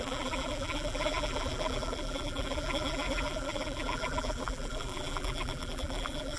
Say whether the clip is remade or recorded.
remade